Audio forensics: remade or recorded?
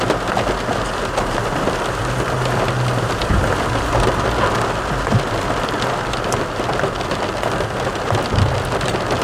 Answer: recorded